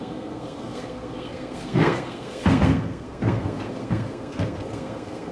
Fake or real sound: fake